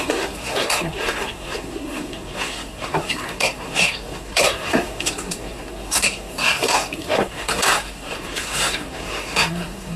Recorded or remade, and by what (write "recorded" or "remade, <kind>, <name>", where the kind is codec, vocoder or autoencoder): remade, codec, SNAC